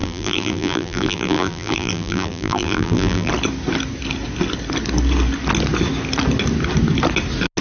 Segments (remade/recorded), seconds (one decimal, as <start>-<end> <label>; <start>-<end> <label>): 0.0-3.3 remade; 3.3-7.6 recorded